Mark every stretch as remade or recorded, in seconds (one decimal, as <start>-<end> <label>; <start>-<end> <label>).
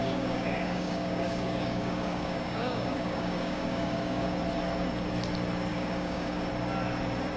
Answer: 0.0-4.4 remade; 4.4-5.7 recorded; 5.7-6.5 remade; 6.5-7.4 recorded